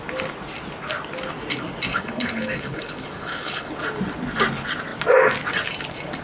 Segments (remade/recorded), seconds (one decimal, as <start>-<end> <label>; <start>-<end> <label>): 0.0-1.9 recorded; 1.9-3.7 remade; 3.7-6.2 recorded